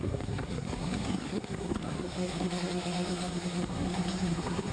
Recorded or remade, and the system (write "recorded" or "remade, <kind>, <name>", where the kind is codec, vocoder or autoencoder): remade, codec, SNAC